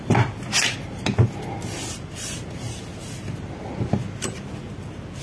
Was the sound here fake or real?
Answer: real